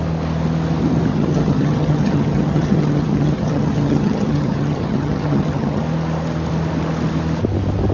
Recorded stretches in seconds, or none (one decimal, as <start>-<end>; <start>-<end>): 0.0-1.1; 5.8-7.9